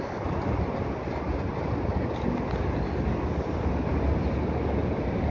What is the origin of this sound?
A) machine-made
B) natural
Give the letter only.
B